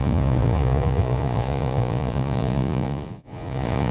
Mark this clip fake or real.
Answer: fake